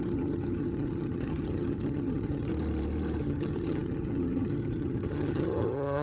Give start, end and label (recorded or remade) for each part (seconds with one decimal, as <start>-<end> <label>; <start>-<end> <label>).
0.0-2.5 remade; 2.5-3.2 recorded; 3.2-6.0 remade